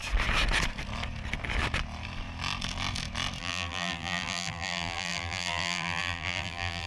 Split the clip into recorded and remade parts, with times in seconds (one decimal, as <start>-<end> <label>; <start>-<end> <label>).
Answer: 0.0-3.4 recorded; 3.4-6.9 remade